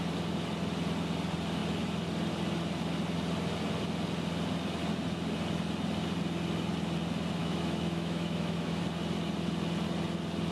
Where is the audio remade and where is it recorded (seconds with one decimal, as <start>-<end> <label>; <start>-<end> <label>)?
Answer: 0.0-7.4 recorded; 7.4-8.8 remade; 8.8-10.5 recorded